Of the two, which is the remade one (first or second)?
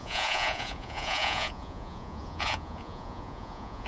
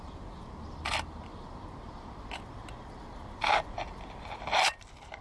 first